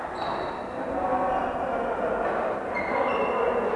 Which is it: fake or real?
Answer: real